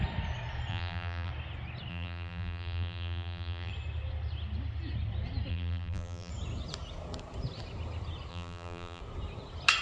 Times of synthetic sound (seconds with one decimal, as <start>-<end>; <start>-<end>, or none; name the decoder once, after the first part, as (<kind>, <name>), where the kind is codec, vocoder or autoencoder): 0.7-1.3 (vocoder, BigVGAN v2); 1.9-3.7; 5.5-6.3; 8.3-9.0